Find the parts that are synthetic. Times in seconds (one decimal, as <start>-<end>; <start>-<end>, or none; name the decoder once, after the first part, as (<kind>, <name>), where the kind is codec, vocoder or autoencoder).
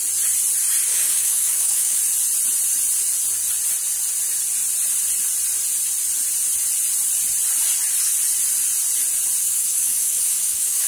0.9-2.0 (codec, DAC); 9.4-10.9